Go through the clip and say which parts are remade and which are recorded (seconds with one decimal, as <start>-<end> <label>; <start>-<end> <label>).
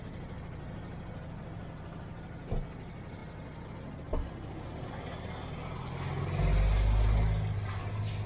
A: 0.0-8.3 recorded